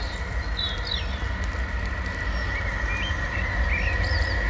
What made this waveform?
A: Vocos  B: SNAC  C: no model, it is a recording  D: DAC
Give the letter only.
C